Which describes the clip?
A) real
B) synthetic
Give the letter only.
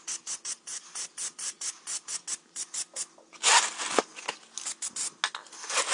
A